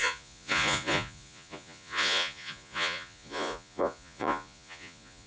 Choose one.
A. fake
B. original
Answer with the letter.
A